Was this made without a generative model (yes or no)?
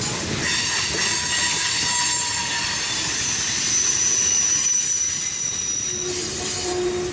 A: yes